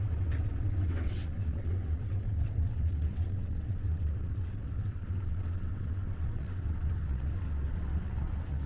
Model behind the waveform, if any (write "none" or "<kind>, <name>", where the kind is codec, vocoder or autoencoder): vocoder, WaveNeXt